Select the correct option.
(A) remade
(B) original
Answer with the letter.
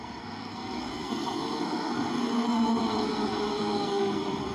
A